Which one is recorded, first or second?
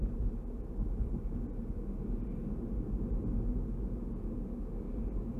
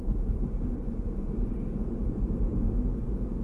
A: first